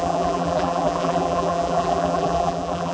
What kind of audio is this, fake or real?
fake